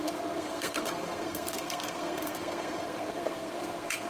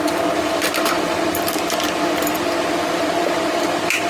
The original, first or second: second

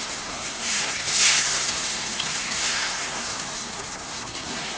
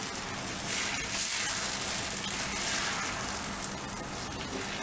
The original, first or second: second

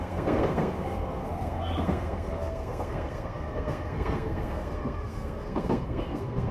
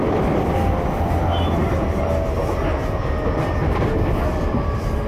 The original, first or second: second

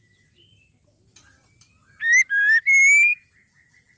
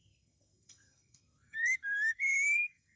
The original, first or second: first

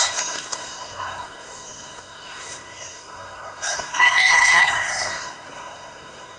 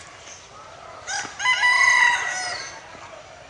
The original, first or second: second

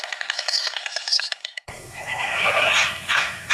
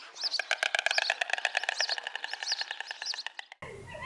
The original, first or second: second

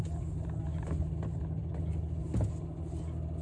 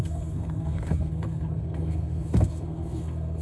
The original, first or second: first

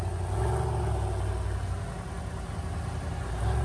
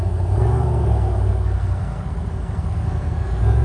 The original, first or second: first